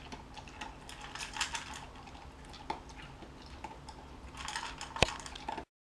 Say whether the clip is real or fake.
real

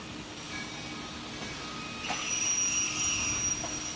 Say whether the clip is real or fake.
real